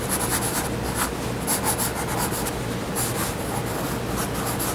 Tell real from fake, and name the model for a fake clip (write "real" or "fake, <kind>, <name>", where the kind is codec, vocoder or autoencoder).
real